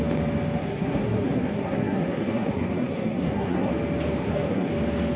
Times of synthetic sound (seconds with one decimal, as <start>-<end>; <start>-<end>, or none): 0.6-3.7; 4.2-4.7